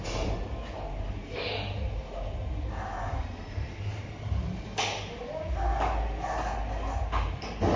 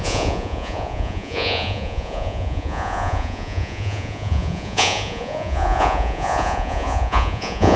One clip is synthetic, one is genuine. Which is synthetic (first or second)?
second